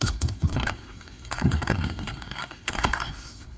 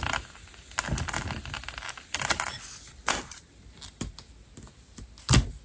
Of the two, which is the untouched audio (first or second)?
second